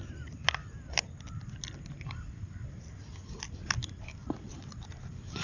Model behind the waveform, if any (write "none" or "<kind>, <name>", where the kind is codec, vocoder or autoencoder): none